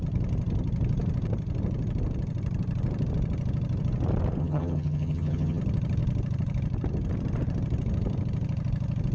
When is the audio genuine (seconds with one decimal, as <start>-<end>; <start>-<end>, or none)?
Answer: 0.0-4.4; 5.6-9.1